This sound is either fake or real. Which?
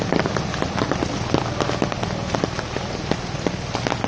real